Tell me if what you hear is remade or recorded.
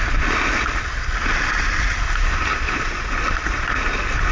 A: recorded